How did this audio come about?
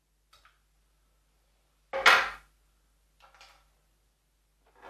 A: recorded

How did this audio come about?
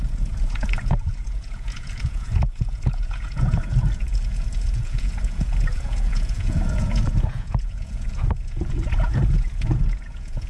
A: remade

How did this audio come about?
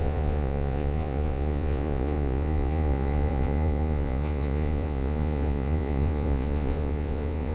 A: remade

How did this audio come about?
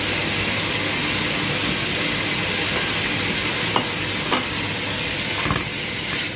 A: recorded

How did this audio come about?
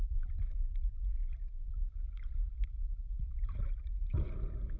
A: recorded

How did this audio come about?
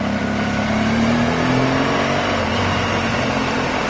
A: recorded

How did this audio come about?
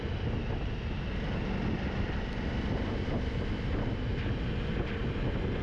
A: recorded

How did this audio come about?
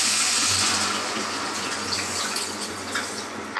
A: remade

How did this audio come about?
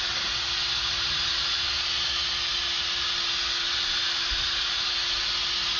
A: recorded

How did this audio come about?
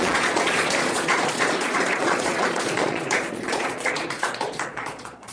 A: remade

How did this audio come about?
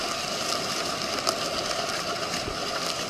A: recorded